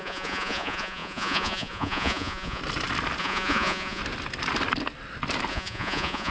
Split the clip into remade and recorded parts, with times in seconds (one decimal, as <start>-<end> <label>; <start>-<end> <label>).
0.0-2.6 remade; 2.6-3.2 recorded; 3.2-4.0 remade; 4.0-5.5 recorded; 5.5-6.3 remade